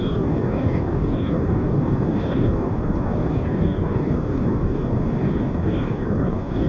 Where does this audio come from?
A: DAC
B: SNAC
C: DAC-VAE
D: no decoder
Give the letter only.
A